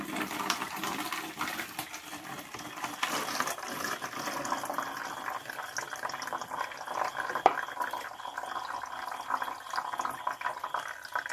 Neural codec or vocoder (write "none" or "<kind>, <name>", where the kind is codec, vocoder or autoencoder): none